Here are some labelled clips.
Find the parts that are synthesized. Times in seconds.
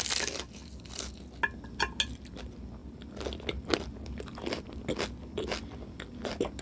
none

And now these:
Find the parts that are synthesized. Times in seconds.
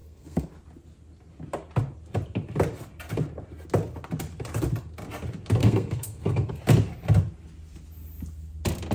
0.0-0.5 (codec, SNAC); 5.6-6.6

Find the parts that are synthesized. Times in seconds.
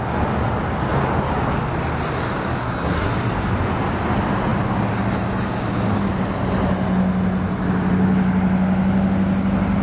2.6-3.1 (codec, SNAC)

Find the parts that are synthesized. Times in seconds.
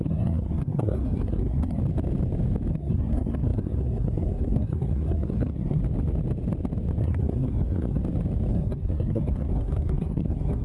0.0-1.8 (codec, SNAC); 2.7-5.8; 7.0-8.0; 8.5-10.6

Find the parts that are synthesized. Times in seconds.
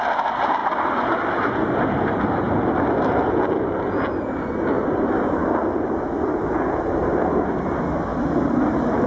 none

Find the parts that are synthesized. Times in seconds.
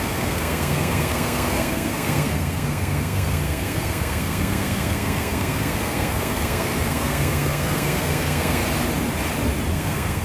0.0-8.6 (codec, SNAC); 9.7-10.2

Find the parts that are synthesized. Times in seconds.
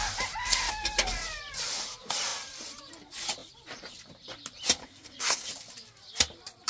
4.8-5.5 (codec, SNAC)